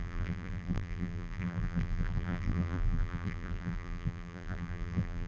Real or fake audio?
fake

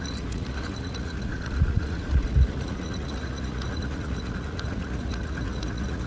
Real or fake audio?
fake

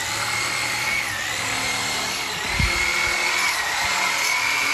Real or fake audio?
fake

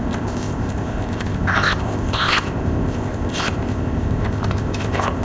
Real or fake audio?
fake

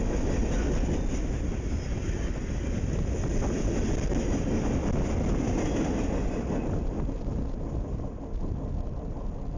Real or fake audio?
real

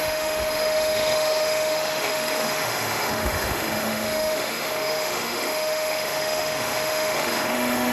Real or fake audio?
fake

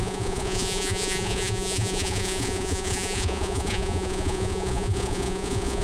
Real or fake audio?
fake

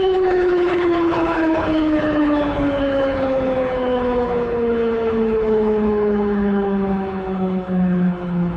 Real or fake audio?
fake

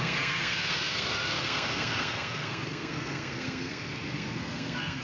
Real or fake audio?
fake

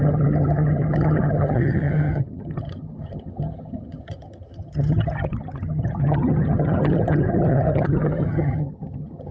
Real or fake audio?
fake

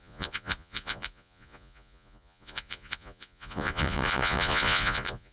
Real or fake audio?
fake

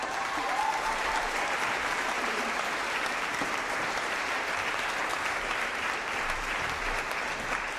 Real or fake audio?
fake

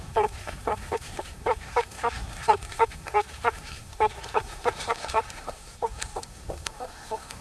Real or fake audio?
fake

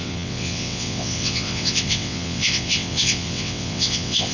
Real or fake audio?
fake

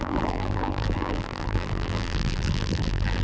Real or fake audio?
fake